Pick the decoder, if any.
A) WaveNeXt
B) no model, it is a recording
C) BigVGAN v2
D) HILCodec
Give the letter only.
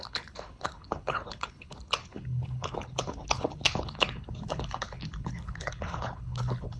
D